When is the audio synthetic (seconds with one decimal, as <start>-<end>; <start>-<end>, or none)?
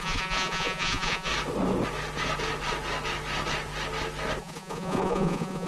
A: 0.0-1.3; 4.4-5.7